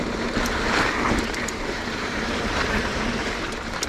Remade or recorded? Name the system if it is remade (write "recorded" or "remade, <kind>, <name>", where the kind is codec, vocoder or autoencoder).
remade, vocoder, BigVGAN v2